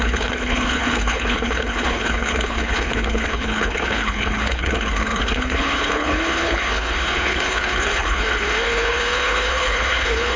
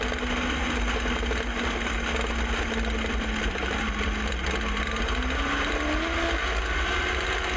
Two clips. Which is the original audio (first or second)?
second